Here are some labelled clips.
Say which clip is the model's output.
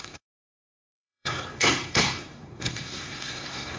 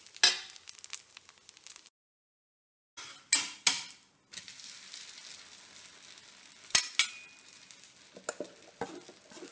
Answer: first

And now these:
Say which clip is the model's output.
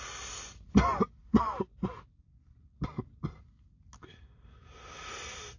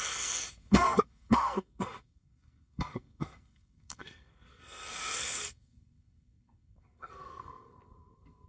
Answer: second